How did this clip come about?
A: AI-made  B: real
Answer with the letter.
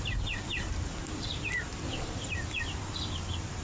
B